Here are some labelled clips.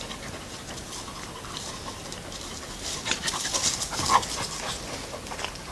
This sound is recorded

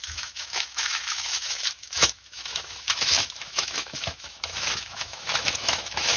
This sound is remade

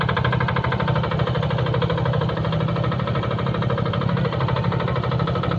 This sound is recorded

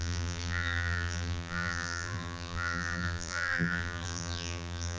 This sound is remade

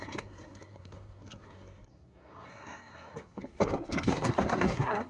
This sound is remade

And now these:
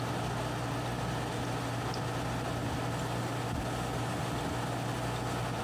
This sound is recorded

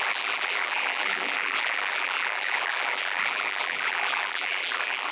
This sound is remade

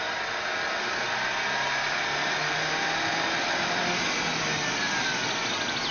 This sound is recorded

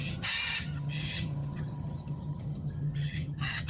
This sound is remade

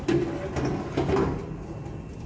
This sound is recorded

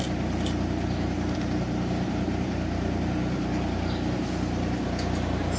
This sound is recorded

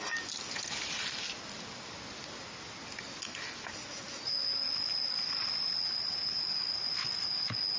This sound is recorded